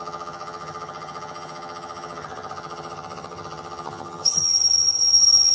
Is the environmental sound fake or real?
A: fake